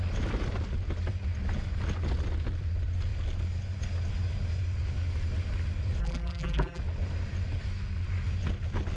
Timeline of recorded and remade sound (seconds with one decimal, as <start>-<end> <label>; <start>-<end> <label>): 0.0-6.0 recorded; 6.0-6.8 remade; 6.8-9.0 recorded